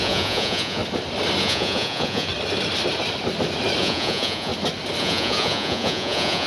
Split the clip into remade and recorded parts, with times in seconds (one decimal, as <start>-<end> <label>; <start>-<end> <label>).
0.0-0.8 remade; 0.8-1.4 recorded; 1.4-2.3 remade; 2.3-3.8 recorded; 3.8-4.5 remade; 4.5-5.0 recorded; 5.0-6.5 remade